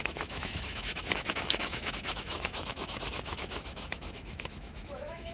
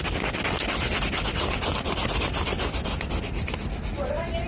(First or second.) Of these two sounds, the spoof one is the first